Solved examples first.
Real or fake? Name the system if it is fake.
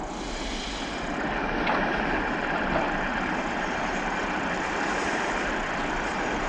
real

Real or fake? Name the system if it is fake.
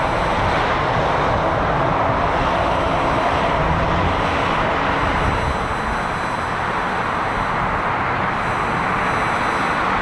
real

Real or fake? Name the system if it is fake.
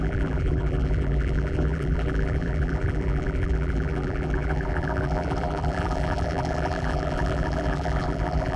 fake, vocoder, BigVGAN v2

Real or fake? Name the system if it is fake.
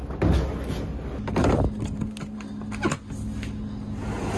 real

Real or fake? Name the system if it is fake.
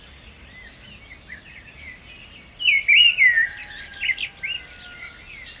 real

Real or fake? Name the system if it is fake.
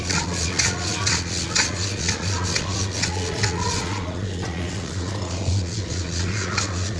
fake, vocoder, Vocos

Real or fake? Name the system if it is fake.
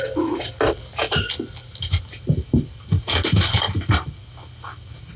real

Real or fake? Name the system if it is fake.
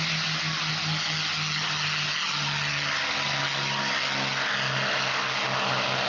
real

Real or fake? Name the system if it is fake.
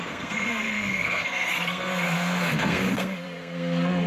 fake, codec, SNAC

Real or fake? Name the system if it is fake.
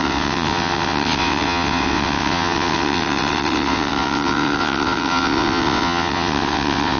fake, vocoder, WaveNeXt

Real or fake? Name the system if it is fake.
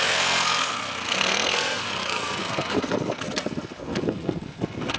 fake, codec, SNAC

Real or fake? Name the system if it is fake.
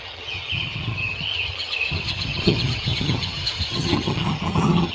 fake, vocoder, HiFi-GAN